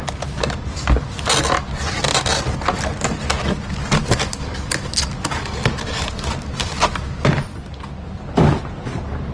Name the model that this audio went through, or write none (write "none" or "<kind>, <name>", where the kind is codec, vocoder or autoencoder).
none